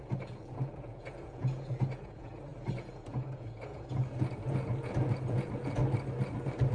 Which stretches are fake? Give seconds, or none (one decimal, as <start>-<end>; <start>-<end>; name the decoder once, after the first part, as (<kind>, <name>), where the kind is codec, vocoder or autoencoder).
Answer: 0.0-5.8 (vocoder, Vocos)